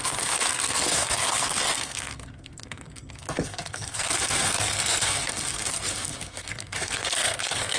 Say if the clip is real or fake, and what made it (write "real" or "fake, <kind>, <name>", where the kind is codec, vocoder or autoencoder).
fake, codec, SNAC